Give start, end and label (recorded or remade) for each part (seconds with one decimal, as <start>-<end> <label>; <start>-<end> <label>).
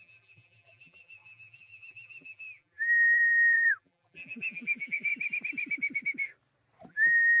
0.0-5.1 remade; 5.1-6.9 recorded; 6.9-7.4 remade